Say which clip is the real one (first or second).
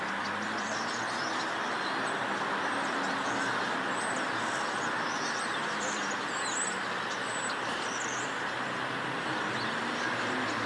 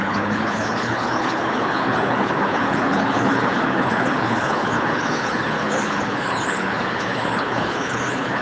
first